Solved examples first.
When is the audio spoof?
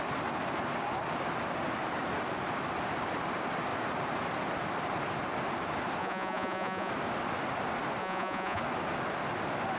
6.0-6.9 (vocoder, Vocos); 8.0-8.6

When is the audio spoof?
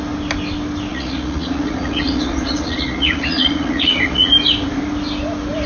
0.9-4.3 (vocoder, Vocos)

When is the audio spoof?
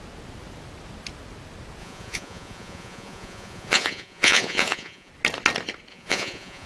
1.8-5.1 (vocoder, Vocos); 5.9-6.7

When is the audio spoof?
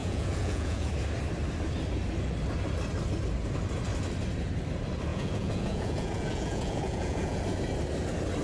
0.0-0.9 (vocoder, Vocos); 5.1-7.4